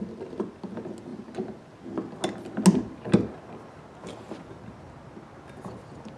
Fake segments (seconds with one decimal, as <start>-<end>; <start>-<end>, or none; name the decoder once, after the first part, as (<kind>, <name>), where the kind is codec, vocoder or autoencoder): none